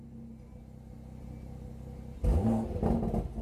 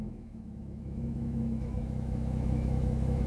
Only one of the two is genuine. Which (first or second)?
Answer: first